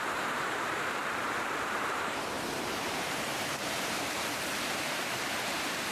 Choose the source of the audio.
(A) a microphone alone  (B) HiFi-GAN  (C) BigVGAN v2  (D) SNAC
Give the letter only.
C